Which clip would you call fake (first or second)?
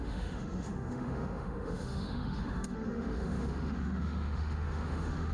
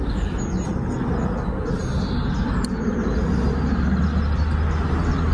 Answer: first